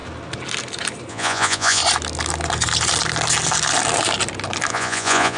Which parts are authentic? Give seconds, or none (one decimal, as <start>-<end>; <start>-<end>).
0.0-1.1; 1.8-4.7